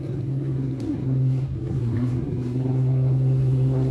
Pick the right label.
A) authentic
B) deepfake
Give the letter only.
B